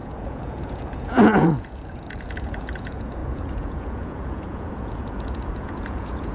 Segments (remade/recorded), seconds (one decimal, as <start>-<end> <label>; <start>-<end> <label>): 0.0-6.3 remade